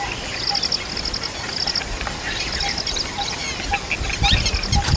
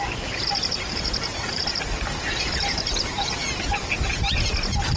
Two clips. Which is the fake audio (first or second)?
second